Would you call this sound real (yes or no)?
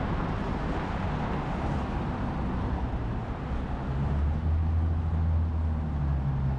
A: yes